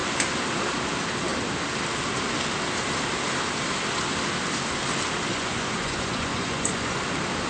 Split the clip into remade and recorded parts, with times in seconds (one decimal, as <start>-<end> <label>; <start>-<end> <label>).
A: 0.0-5.3 recorded; 5.3-7.0 remade; 7.0-7.5 recorded